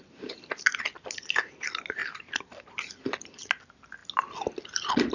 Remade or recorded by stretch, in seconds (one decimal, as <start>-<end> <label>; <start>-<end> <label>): 0.0-5.1 recorded